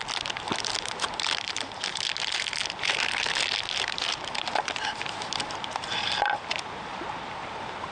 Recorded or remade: recorded